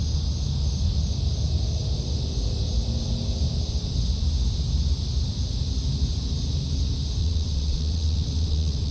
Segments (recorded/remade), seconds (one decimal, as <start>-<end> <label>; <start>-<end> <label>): 0.0-7.2 recorded; 7.2-8.9 remade